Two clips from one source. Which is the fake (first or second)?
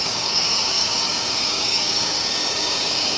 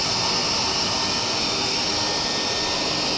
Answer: first